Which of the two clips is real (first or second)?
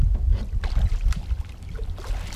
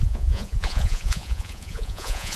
first